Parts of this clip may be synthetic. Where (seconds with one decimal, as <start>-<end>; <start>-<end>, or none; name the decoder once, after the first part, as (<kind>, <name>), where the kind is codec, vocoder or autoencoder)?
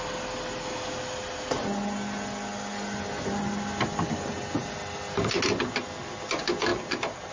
none